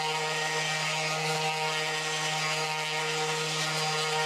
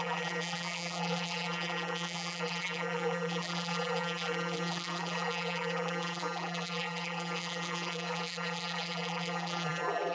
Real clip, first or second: first